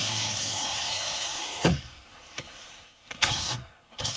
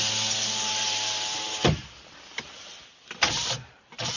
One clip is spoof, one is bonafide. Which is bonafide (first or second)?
second